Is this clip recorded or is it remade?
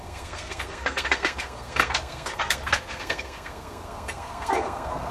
remade